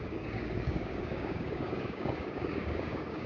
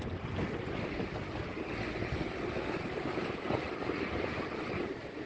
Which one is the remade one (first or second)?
first